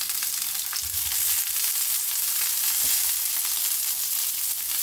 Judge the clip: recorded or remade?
recorded